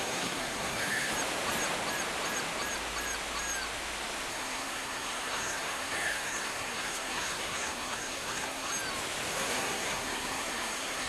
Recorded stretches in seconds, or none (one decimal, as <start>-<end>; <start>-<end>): 1.1-4.3; 8.7-9.3